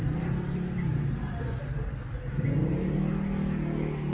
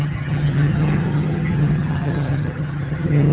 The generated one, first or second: second